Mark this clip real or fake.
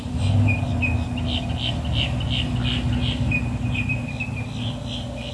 real